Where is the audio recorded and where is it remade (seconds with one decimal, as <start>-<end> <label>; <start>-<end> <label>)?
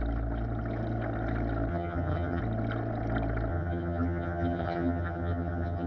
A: 0.0-1.7 recorded; 1.7-2.4 remade; 2.4-3.5 recorded; 3.5-5.9 remade